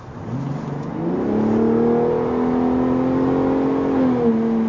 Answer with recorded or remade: recorded